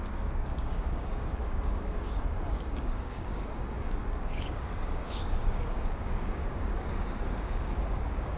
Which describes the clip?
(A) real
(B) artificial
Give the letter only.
B